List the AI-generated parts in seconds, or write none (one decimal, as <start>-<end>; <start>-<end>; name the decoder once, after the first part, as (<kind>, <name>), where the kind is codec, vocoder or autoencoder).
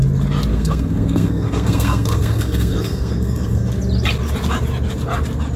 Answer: 0.5-3.7 (codec, SNAC)